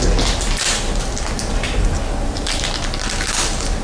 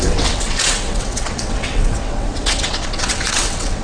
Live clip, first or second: first